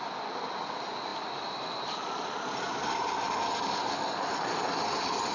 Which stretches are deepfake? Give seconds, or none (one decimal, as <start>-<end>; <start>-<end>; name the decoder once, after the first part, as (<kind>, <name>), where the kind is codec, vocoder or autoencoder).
none